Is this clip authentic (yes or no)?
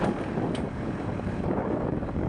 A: no